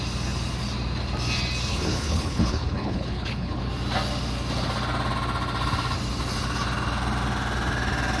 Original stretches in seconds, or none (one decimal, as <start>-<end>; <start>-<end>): 0.0-1.7; 3.6-8.2